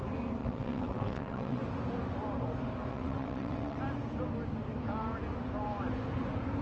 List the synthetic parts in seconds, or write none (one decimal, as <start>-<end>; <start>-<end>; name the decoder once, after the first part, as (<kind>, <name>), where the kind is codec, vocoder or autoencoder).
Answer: 0.4-1.6 (vocoder, WaveNeXt); 2.9-3.8